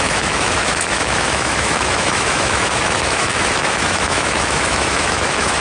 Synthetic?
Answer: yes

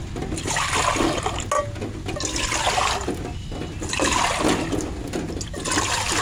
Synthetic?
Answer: no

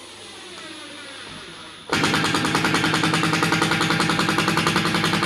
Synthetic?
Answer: no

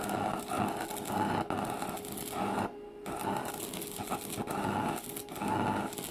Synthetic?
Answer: no